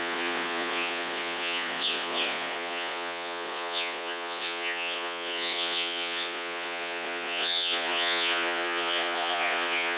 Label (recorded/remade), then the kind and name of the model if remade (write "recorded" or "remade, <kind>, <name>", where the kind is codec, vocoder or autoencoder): remade, vocoder, Vocos